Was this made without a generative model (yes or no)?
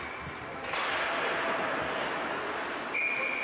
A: yes